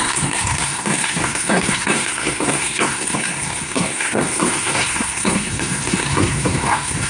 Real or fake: fake